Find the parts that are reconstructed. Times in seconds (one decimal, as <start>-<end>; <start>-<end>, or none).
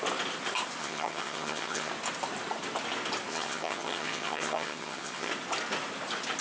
0.8-1.9; 3.3-5.3